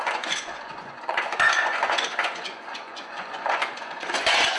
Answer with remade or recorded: remade